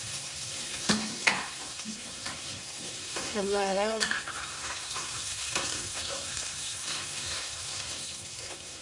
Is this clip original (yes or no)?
no